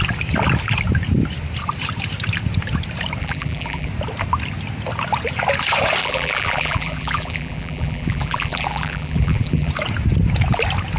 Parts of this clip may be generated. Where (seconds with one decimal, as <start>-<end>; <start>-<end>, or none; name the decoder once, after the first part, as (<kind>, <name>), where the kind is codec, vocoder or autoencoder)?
3.2-3.9 (vocoder, BigVGAN v2); 6.0-9.7